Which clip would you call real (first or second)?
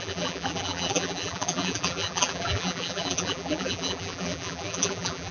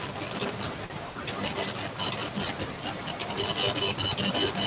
second